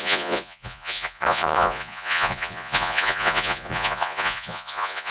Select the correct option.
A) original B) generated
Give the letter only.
B